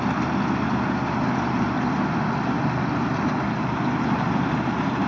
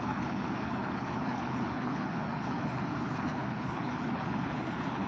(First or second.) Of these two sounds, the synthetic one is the second